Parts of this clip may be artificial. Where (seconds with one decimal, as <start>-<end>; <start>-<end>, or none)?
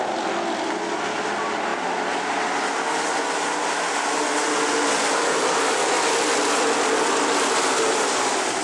5.8-8.6